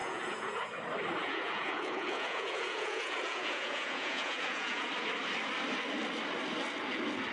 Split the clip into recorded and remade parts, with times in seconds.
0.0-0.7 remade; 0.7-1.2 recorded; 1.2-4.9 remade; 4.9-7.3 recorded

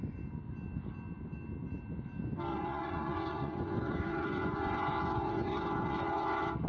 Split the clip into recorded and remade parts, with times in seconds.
0.0-2.5 recorded; 2.5-6.7 remade

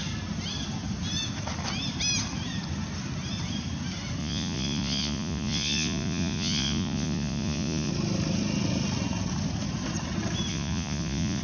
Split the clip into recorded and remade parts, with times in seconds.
0.0-4.2 recorded; 4.2-7.9 remade; 7.9-10.5 recorded; 10.5-11.4 remade

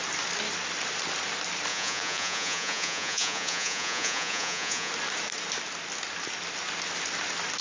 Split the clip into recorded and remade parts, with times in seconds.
0.0-1.7 recorded; 1.7-4.9 remade; 4.9-7.6 recorded

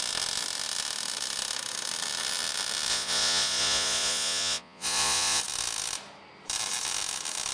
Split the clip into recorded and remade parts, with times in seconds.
0.0-2.9 recorded; 2.9-5.4 remade; 5.4-7.5 recorded

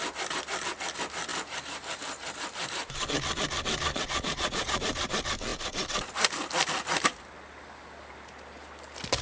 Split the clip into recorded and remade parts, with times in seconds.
0.0-3.9 recorded; 3.9-4.8 remade; 4.8-9.2 recorded